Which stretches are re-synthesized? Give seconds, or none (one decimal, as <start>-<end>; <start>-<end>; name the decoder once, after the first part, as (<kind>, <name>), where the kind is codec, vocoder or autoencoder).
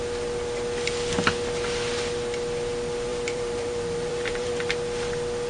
3.1-4.5 (vocoder, BigVGAN v2)